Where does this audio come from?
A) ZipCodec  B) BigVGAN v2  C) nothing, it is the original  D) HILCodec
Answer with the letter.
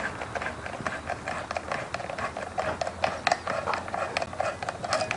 C